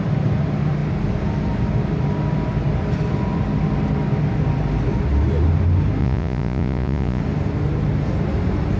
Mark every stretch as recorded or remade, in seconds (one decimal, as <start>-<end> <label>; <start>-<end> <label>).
0.0-6.0 recorded; 6.0-7.2 remade; 7.2-8.8 recorded